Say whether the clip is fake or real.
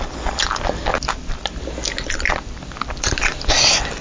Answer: real